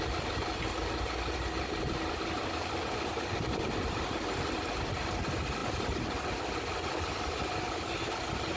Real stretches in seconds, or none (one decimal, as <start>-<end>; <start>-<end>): 0.0-8.6